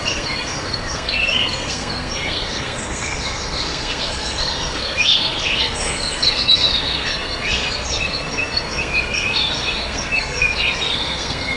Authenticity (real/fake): fake